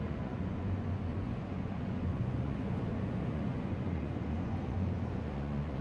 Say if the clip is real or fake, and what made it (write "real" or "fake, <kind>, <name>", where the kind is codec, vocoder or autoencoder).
fake, vocoder, Vocos